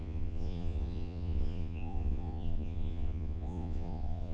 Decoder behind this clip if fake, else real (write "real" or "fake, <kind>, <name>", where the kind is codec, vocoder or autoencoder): fake, vocoder, Vocos